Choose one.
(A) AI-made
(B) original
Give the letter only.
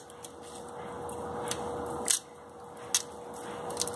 B